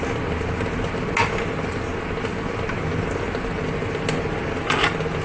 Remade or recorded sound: recorded